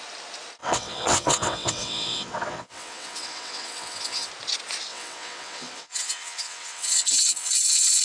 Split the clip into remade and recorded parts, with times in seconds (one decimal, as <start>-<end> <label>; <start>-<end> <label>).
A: 0.0-0.6 recorded; 0.6-4.3 remade; 4.3-4.9 recorded; 4.9-8.0 remade